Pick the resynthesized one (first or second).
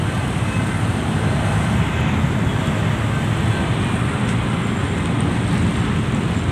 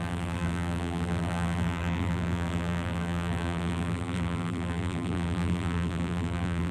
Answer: second